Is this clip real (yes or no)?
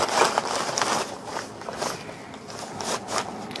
yes